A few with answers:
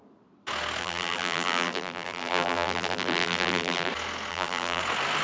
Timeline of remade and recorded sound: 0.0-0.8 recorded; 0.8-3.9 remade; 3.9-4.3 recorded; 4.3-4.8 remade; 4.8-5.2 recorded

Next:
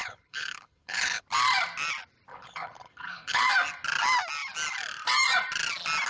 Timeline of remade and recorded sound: 0.0-1.2 remade; 1.2-2.3 recorded; 2.3-3.4 remade; 3.4-6.1 recorded

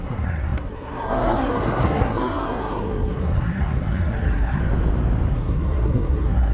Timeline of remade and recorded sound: 0.0-4.6 remade; 4.6-5.3 recorded; 5.3-6.5 remade

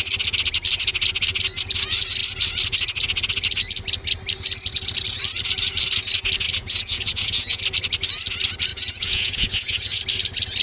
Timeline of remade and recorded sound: 0.0-6.6 recorded; 6.6-7.6 remade; 7.6-8.7 recorded; 8.7-10.0 remade; 10.0-10.6 recorded

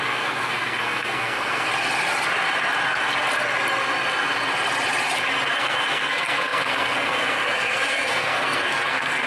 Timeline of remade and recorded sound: 0.0-1.7 remade; 1.7-5.5 recorded; 5.5-9.3 remade